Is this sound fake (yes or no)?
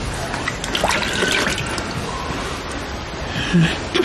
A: no